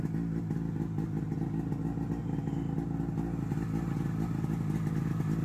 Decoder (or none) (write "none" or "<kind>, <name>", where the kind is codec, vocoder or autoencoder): none